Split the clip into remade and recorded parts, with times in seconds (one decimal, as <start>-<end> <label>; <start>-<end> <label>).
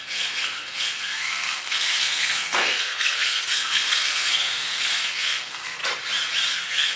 0.0-5.8 remade; 5.8-6.5 recorded; 6.5-7.0 remade